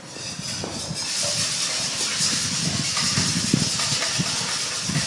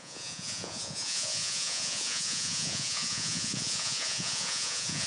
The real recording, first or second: first